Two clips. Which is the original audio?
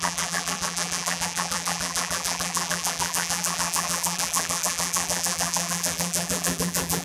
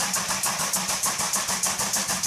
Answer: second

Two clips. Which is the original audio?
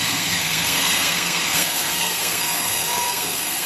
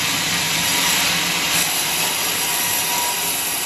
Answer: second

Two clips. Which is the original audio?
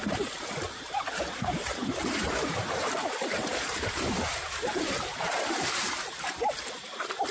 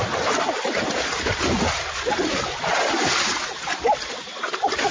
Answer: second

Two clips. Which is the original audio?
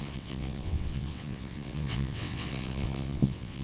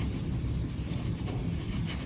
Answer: second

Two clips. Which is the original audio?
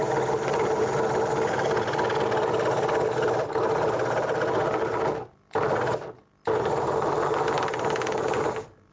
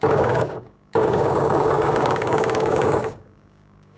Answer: first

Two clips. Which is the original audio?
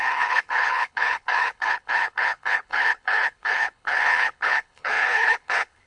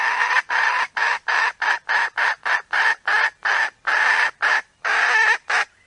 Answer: second